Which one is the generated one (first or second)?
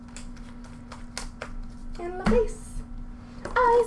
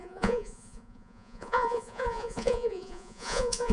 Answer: second